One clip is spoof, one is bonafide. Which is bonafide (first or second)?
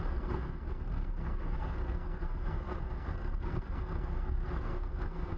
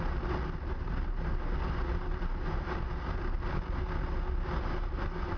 second